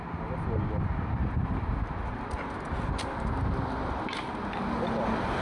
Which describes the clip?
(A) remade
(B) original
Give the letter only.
B